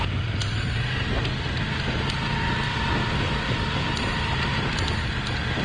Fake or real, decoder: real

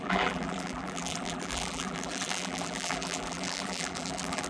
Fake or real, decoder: fake, vocoder, BigVGAN v2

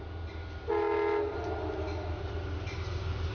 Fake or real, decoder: real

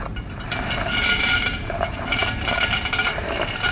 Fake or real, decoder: fake, vocoder, BigVGAN v2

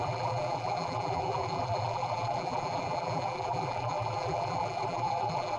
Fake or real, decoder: fake, vocoder, BigVGAN v2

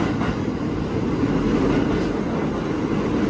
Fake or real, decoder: real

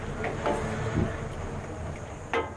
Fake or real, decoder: real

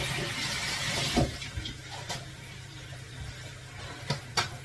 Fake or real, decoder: fake, vocoder, BigVGAN v2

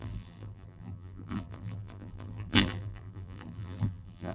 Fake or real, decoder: fake, vocoder, BigVGAN v2